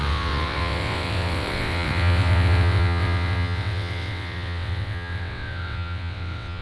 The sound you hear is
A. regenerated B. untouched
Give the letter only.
A